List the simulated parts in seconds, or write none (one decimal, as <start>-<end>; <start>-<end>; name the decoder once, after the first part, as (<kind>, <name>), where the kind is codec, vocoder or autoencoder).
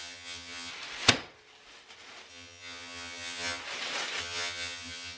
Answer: 0.0-0.7 (vocoder, HiFi-GAN); 2.3-3.6; 4.2-5.2